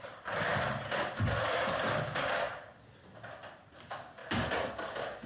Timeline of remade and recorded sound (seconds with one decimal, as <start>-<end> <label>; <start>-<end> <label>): 0.0-0.5 recorded; 0.5-2.5 remade; 2.5-4.2 recorded; 4.2-4.7 remade; 4.7-5.3 recorded